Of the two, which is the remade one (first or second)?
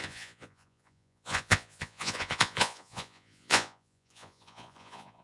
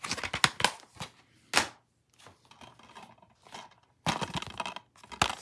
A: first